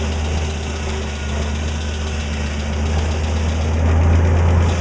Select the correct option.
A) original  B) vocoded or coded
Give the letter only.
A